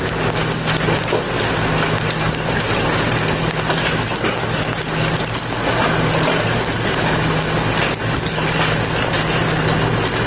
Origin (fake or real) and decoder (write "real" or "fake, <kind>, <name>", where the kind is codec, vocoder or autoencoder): real